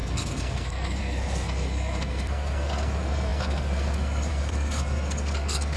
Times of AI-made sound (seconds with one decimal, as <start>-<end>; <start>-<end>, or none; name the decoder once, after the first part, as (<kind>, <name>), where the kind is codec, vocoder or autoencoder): 0.0-5.8 (codec, SNAC)